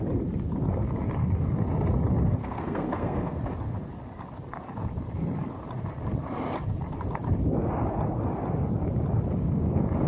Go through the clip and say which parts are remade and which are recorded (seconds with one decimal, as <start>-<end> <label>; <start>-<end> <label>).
0.0-2.4 recorded; 2.4-3.4 remade; 3.4-10.1 recorded